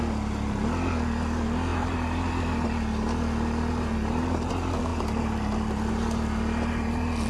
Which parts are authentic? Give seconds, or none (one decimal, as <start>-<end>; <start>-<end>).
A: 0.0-7.3